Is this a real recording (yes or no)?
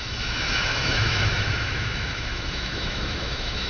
no